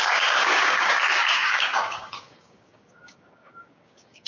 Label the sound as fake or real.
fake